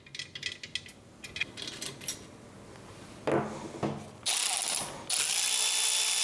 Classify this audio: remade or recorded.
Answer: recorded